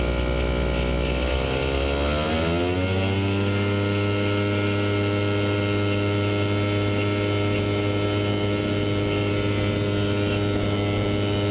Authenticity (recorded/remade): recorded